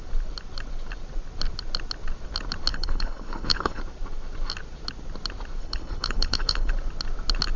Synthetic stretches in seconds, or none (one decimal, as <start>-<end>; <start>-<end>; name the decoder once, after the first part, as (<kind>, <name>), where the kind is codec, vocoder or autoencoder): 2.7-3.8 (codec, HILCodec); 5.6-6.7